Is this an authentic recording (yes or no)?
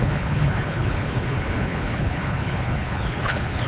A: no